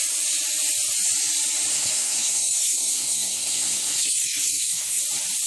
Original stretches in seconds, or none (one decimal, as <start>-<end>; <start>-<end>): 0.0-1.7; 5.0-5.5